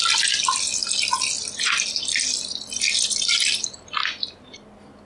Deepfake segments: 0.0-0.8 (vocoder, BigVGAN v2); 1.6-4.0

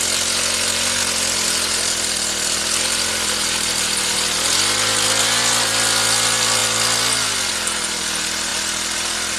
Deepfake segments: none

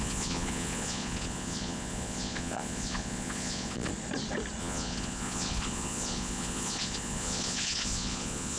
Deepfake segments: 0.0-3.9 (vocoder, Vocos); 4.6-8.6

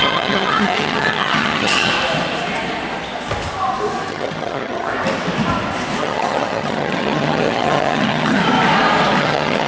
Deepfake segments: 0.0-1.9 (vocoder, HiFi-GAN); 4.1-4.9; 6.0-8.4; 9.2-9.7